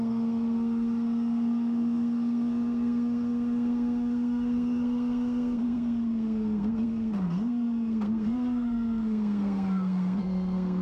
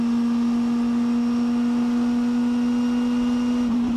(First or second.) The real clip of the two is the second